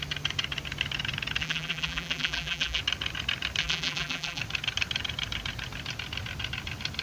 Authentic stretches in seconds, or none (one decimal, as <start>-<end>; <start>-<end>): 0.0-1.4; 2.8-3.6; 4.4-7.0